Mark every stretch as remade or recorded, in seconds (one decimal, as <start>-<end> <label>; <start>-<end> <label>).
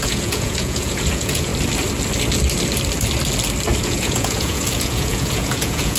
0.0-1.5 remade; 1.5-3.8 recorded; 3.8-6.0 remade